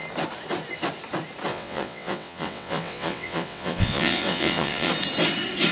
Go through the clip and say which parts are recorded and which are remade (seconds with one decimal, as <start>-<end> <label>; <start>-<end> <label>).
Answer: 0.0-1.5 recorded; 1.5-4.9 remade; 4.9-5.7 recorded

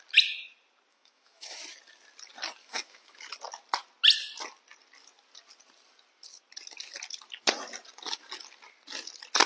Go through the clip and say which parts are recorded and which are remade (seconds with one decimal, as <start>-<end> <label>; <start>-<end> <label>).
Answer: 0.0-0.9 recorded; 0.9-1.6 remade; 1.6-2.6 recorded; 2.6-3.3 remade; 3.3-9.5 recorded